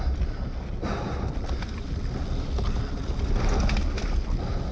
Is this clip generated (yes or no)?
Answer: no